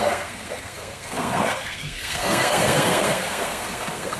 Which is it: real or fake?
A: fake